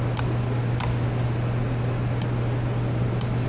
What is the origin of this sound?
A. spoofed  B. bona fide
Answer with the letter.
B